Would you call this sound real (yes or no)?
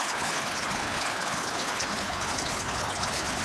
no